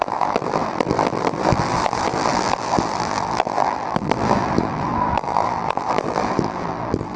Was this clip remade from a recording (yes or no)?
yes